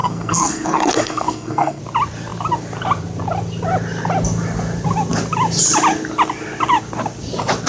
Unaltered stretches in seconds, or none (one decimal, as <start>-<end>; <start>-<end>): 1.8-7.7

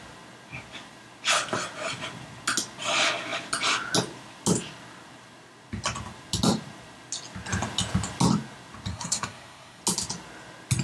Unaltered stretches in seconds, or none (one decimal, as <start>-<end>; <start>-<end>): 0.0-8.9; 9.8-10.8